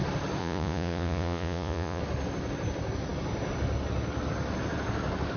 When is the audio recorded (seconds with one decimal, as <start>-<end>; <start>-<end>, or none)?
0.0-0.4; 2.0-5.4

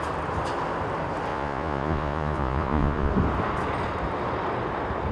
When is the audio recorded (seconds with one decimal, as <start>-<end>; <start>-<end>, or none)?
0.0-1.3; 3.1-5.1

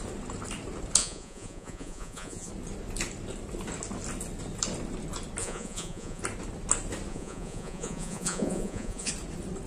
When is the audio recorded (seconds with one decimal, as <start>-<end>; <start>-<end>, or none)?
0.0-1.0; 2.5-5.4; 6.2-7.1; 9.1-9.7

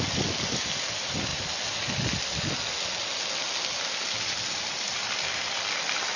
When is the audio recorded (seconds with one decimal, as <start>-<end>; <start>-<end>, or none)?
0.0-6.2